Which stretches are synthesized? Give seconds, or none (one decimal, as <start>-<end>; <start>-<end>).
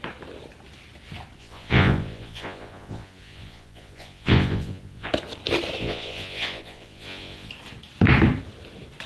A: 1.4-5.1; 5.8-7.5